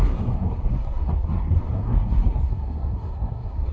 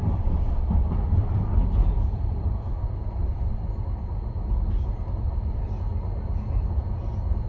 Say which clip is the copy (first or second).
first